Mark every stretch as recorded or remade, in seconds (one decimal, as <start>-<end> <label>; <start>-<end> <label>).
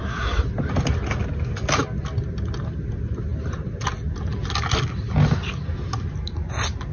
0.0-6.9 recorded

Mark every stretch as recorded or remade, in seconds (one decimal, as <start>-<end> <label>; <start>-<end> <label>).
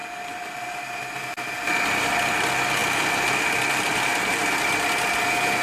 0.0-2.8 recorded; 2.8-4.0 remade; 4.0-5.6 recorded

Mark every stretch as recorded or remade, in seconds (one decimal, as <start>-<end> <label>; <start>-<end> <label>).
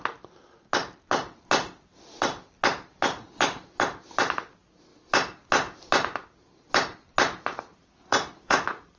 0.0-7.7 recorded; 7.7-9.0 remade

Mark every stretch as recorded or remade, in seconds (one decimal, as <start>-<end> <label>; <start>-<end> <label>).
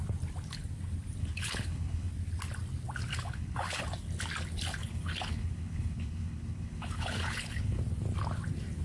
0.0-1.2 recorded; 1.2-2.1 remade; 2.1-3.1 recorded; 3.1-3.8 remade; 3.8-4.8 recorded; 4.8-7.8 remade; 7.8-8.8 recorded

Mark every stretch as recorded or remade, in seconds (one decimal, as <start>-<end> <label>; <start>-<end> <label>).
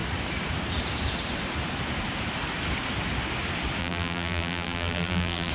0.0-3.8 recorded; 3.8-5.5 remade